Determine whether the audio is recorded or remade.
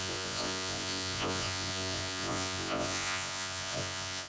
remade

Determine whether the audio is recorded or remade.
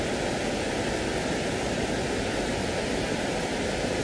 recorded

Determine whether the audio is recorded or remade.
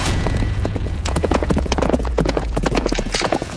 remade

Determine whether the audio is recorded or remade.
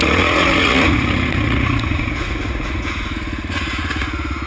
remade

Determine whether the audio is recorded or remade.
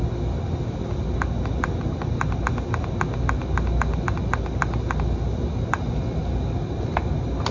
recorded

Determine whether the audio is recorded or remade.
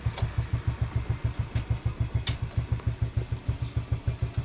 recorded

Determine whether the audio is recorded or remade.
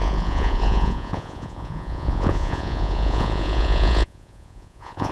remade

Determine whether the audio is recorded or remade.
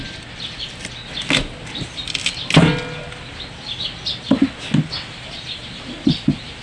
recorded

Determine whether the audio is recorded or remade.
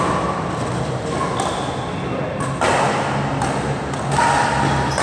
recorded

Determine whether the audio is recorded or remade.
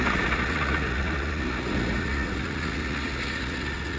remade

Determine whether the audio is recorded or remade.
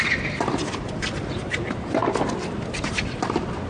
recorded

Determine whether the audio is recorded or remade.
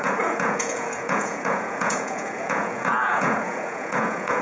remade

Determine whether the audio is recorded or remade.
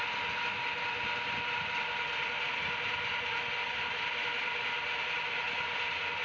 recorded